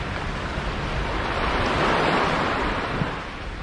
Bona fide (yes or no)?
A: yes